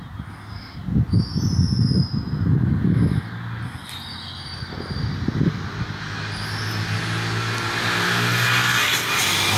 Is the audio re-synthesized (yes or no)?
no